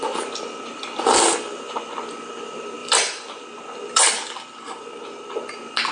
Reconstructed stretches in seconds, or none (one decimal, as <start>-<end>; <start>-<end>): 0.7-1.9; 2.8-5.5